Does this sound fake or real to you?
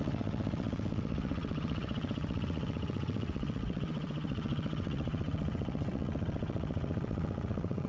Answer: fake